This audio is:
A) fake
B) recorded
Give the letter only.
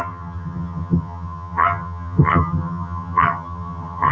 A